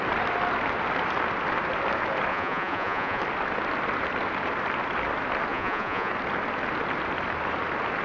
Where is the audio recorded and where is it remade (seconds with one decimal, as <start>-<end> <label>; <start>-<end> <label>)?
0.0-2.3 recorded; 2.3-3.2 remade; 3.2-5.5 recorded; 5.5-6.1 remade; 6.1-8.0 recorded